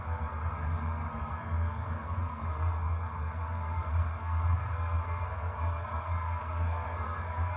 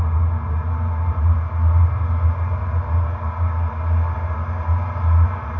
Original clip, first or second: second